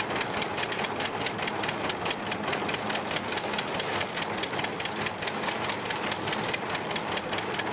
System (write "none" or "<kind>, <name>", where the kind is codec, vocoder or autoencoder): none